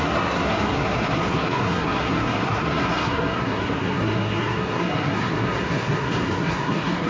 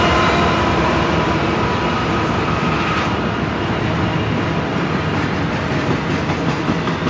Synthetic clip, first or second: first